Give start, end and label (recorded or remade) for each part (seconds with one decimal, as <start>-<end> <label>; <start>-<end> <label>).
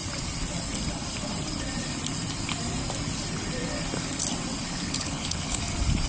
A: 0.0-4.7 recorded; 4.7-5.6 remade; 5.6-6.1 recorded